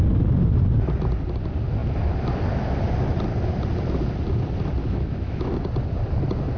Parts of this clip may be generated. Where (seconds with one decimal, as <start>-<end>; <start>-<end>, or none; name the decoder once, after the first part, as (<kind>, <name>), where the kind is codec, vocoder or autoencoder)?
4.8-5.5 (autoencoder, DAC-VAE)